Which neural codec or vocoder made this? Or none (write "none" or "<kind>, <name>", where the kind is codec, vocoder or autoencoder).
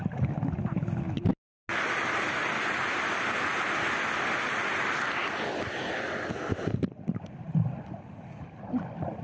none